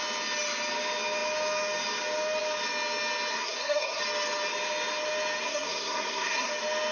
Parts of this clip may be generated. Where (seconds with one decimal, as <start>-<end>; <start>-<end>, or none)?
3.3-4.0; 5.4-6.5